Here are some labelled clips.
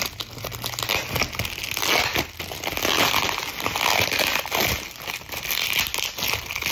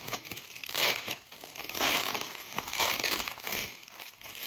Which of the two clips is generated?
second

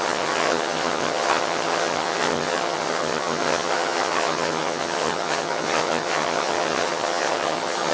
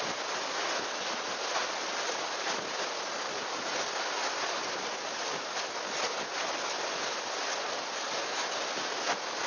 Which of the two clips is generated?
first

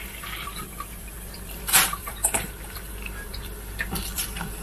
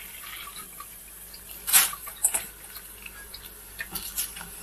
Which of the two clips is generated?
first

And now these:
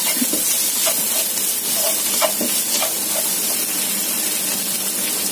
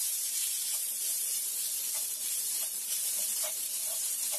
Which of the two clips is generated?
second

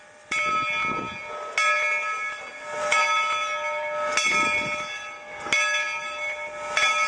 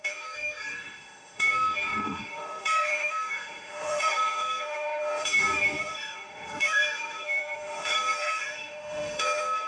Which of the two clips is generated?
second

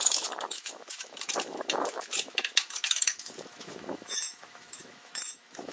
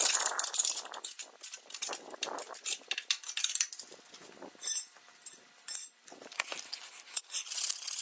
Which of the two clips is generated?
first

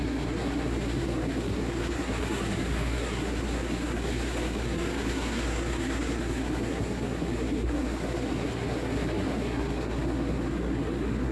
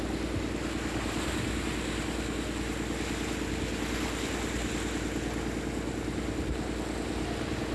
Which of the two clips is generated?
first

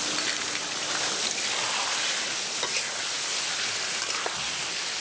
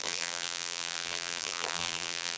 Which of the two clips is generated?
second